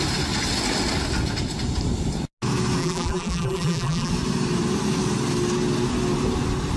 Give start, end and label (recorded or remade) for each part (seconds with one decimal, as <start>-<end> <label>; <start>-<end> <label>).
0.0-2.8 recorded; 2.8-4.1 remade; 4.1-6.8 recorded

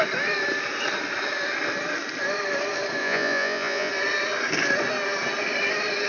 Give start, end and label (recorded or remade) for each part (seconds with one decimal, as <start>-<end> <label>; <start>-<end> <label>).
0.0-3.0 recorded; 3.0-3.9 remade; 3.9-6.1 recorded

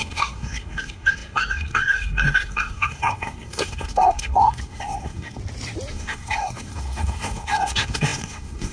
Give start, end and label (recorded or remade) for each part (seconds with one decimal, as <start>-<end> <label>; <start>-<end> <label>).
0.0-5.4 remade; 5.4-5.9 recorded; 5.9-8.7 remade

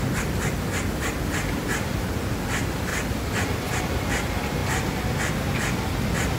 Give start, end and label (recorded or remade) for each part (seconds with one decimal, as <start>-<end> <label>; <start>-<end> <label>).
0.0-6.4 recorded

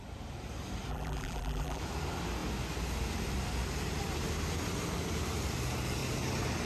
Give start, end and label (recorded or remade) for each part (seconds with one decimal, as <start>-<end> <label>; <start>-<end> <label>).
0.0-0.9 recorded; 0.9-1.8 remade; 1.8-6.7 recorded

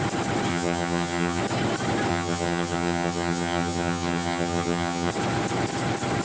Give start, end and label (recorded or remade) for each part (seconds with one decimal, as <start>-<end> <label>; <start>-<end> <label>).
0.0-0.5 recorded; 0.5-1.4 remade; 1.4-2.1 recorded; 2.1-5.1 remade; 5.1-6.2 recorded

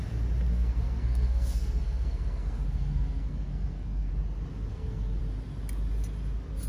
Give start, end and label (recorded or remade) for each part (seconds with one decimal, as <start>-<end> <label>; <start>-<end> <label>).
0.0-0.5 recorded; 0.5-4.1 remade; 4.1-4.7 recorded; 4.7-5.2 remade; 5.2-6.7 recorded

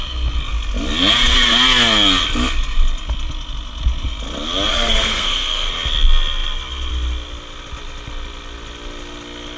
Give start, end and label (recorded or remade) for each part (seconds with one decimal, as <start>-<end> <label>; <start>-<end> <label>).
0.0-4.7 recorded; 4.7-5.7 remade; 5.7-9.6 recorded